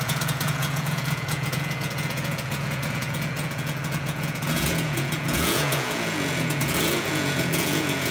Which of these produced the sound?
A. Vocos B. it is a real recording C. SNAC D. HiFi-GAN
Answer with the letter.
A